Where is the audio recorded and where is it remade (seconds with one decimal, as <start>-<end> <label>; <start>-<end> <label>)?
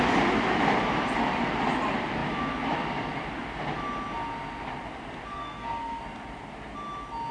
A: 0.0-5.3 recorded; 5.3-6.0 remade; 6.0-7.3 recorded